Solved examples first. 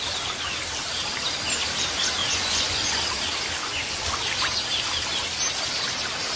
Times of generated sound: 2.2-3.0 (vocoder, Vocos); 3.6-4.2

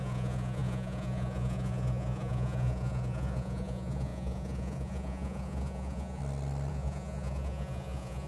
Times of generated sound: 0.0-6.2 (vocoder, Vocos); 6.7-8.3

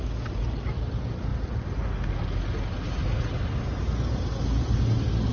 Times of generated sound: none

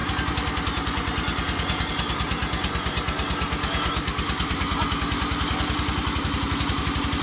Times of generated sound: none

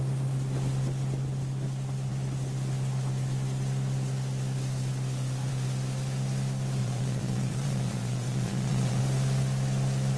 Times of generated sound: 6.8-9.0 (vocoder, Vocos)

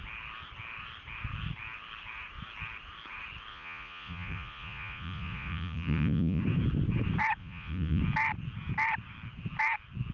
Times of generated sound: 3.5-6.4 (vocoder, Vocos); 7.4-8.0

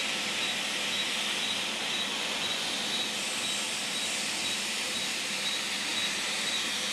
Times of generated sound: 2.1-2.7 (vocoder, Vocos)